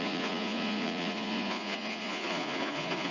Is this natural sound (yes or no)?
no